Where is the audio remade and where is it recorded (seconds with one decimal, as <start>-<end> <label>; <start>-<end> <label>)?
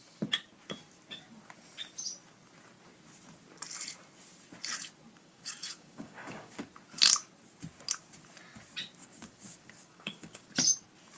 0.0-5.2 recorded; 5.2-6.6 remade; 6.6-9.0 recorded; 9.0-10.5 remade; 10.5-11.2 recorded